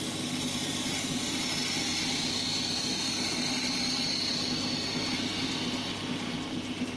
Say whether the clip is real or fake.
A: real